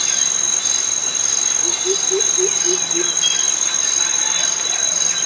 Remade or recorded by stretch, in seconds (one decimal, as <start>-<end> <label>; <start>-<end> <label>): 0.0-5.3 recorded

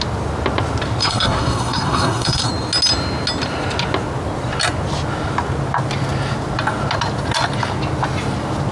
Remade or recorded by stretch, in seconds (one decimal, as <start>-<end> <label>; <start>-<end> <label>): 0.0-1.0 recorded; 1.0-2.5 remade; 2.5-8.7 recorded

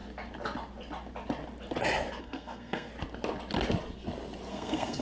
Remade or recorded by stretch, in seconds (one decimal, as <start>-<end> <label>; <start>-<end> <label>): 0.0-2.2 recorded; 2.2-2.9 remade; 2.9-4.5 recorded; 4.5-5.0 remade

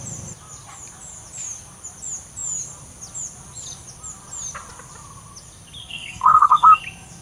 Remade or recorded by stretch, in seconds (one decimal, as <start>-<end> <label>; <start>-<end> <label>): 0.0-5.8 recorded; 5.8-6.8 remade; 6.8-7.2 recorded

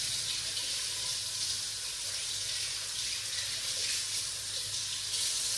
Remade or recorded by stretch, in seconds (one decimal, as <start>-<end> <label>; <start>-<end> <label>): 0.0-5.6 recorded